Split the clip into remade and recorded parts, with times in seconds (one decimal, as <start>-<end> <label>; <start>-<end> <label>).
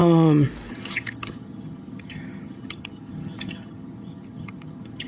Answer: 0.0-0.7 recorded; 0.7-5.1 remade